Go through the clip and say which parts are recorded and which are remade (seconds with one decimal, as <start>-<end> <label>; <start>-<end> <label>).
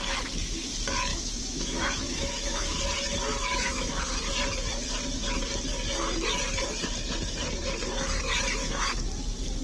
0.0-1.1 recorded; 1.1-2.8 remade; 2.8-3.3 recorded; 3.3-3.9 remade; 3.9-8.6 recorded; 8.6-9.1 remade; 9.1-9.6 recorded